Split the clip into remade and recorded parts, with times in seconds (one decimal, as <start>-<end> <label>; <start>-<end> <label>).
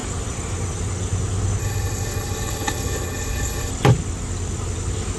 0.0-1.6 recorded; 1.6-3.7 remade; 3.7-5.2 recorded